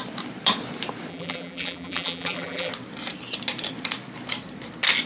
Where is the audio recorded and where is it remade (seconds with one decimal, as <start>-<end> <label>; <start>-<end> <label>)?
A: 0.0-1.1 recorded; 1.1-2.7 remade; 2.7-5.1 recorded